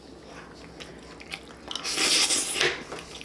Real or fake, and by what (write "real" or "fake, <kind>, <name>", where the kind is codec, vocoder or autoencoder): real